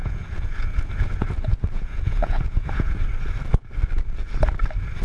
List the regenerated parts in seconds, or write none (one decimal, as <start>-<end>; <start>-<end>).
0.0-3.0